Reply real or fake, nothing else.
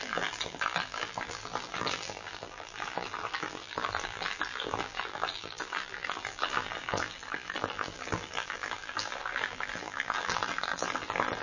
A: fake